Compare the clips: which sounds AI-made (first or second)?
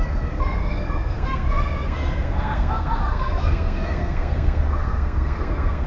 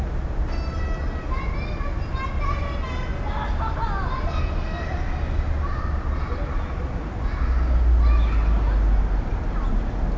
first